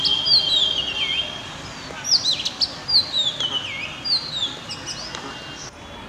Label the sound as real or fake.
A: real